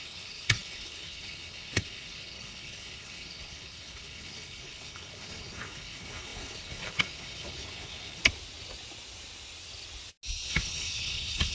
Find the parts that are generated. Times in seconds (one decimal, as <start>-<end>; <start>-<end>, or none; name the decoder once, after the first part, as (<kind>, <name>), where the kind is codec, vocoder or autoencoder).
0.0-8.2 (codec, HILCodec); 10.5-11.5